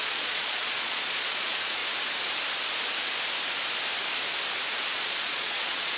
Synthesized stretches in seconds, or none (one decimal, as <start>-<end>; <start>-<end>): 0.0-1.8; 4.8-6.0